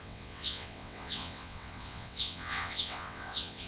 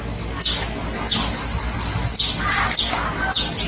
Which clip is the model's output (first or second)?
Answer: first